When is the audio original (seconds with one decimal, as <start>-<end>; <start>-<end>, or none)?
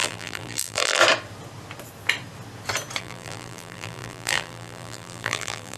1.0-3.0